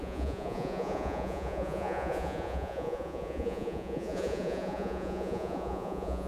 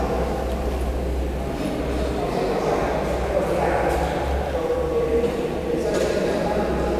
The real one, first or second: second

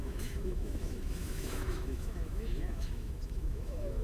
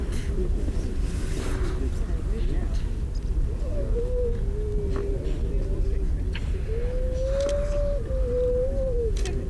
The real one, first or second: second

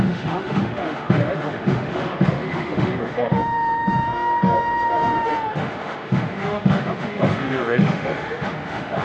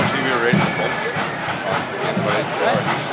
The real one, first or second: second